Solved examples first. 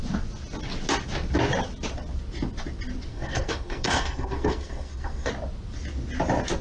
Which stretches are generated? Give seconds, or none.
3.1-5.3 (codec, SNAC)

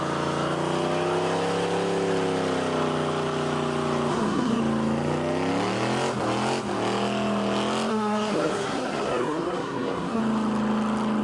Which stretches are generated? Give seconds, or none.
4.1-4.6 (codec, SNAC); 7.9-10.2

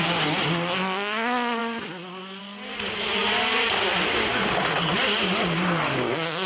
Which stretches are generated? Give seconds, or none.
none